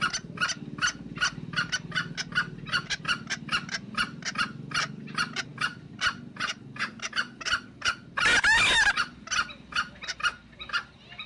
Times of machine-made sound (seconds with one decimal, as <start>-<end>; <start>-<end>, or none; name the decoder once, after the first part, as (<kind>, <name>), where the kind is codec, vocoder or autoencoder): none